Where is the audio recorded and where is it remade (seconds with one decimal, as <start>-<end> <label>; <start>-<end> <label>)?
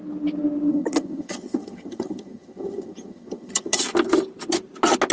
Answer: 0.0-0.7 recorded; 0.7-3.8 remade; 3.8-5.1 recorded